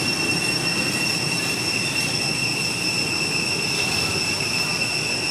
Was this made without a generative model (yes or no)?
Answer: yes